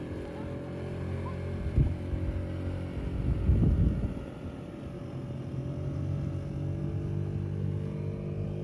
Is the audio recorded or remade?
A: recorded